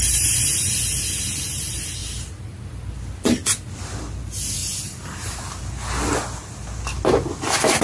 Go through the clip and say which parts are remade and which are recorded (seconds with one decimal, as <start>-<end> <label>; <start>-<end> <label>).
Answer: 0.0-4.6 recorded; 4.6-5.4 remade; 5.4-7.8 recorded